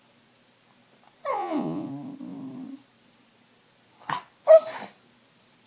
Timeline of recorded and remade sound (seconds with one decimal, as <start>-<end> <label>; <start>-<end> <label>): 0.0-1.3 recorded; 1.3-1.9 remade; 1.9-5.7 recorded